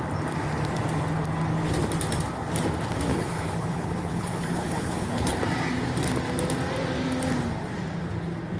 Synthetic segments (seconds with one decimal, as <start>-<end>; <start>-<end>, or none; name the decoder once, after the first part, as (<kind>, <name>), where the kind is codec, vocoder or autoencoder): 3.1-5.4 (codec, HILCodec)